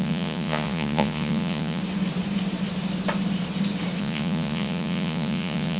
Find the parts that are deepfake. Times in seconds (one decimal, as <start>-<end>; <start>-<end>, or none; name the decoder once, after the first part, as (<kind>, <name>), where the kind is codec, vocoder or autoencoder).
0.0-1.8 (vocoder, Vocos); 4.0-5.8